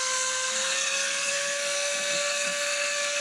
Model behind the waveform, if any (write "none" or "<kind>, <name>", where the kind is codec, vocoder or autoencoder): codec, SNAC